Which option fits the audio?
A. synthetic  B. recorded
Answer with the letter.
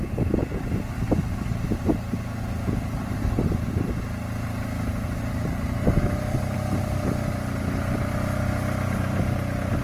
B